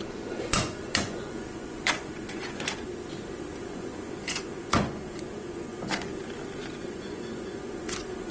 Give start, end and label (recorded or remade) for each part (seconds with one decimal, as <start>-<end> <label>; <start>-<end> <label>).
0.0-2.9 remade; 2.9-3.6 recorded; 3.6-6.1 remade; 6.1-6.8 recorded; 6.8-8.3 remade